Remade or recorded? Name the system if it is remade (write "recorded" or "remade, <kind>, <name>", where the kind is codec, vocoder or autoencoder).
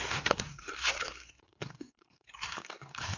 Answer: remade, codec, SNAC